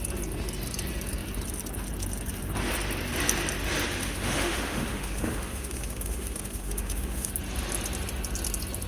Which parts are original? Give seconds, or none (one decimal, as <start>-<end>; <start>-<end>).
0.0-4.0; 7.3-8.9